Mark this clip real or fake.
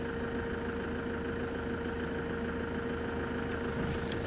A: real